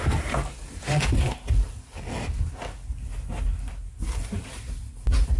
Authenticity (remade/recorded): recorded